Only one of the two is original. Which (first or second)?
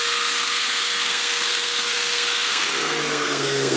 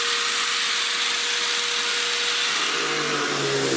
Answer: second